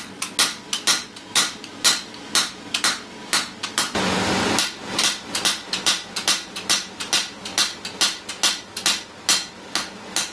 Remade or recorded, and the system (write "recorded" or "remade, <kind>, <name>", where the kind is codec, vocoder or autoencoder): recorded